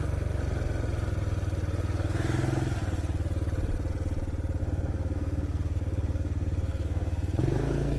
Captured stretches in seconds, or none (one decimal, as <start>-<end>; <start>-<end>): 0.0-4.6